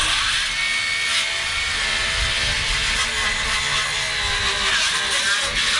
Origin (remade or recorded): recorded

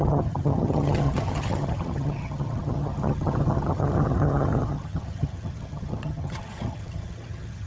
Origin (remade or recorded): remade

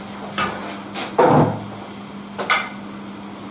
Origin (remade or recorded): recorded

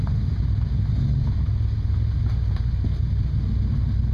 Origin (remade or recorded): recorded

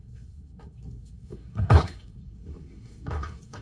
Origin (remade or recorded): remade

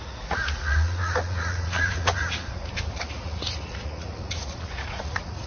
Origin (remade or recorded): remade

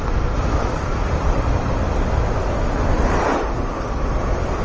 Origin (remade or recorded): recorded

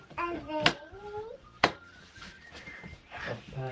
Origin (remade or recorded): remade